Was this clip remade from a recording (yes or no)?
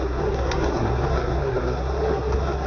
yes